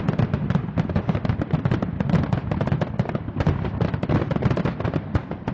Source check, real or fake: real